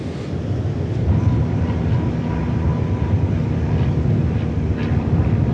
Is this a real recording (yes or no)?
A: yes